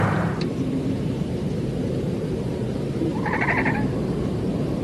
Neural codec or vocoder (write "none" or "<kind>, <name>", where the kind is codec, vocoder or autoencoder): vocoder, BigVGAN v2